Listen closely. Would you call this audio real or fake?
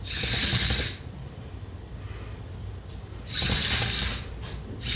real